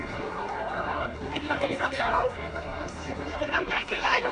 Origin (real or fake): fake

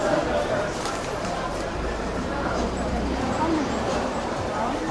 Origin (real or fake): fake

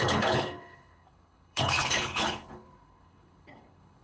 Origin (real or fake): fake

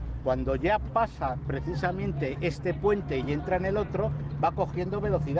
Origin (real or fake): real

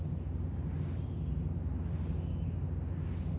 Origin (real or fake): real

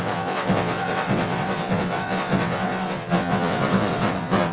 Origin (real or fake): fake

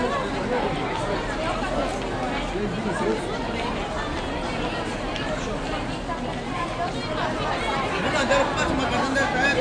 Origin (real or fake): real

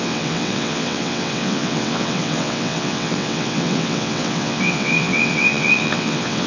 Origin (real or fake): fake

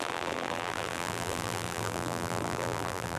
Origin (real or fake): fake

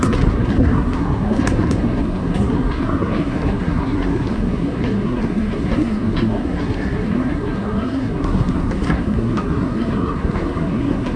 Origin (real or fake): fake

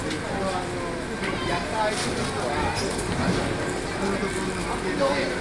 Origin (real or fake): real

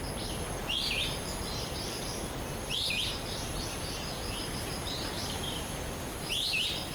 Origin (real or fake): fake